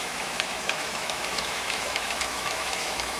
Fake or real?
fake